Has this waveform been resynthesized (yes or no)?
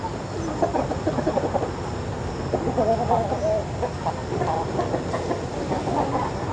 no